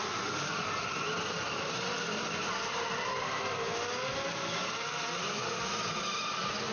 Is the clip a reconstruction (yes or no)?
no